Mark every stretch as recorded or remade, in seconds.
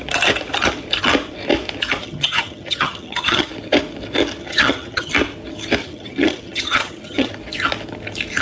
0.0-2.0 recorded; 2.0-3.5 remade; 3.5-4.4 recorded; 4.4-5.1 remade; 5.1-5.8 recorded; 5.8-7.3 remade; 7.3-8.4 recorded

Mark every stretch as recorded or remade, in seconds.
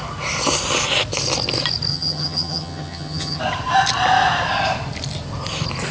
0.0-1.9 recorded; 1.9-3.4 remade; 3.4-5.9 recorded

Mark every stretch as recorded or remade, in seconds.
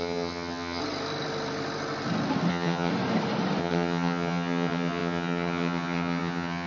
0.0-0.8 remade; 0.8-2.5 recorded; 2.5-2.9 remade; 2.9-3.6 recorded; 3.6-6.7 remade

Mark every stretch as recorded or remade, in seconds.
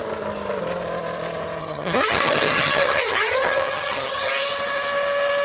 0.0-1.6 recorded; 1.6-4.3 remade; 4.3-5.4 recorded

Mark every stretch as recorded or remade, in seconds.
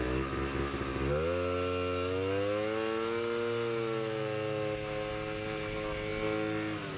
0.0-7.0 recorded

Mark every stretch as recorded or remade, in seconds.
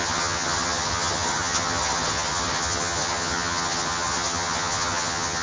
0.0-5.4 remade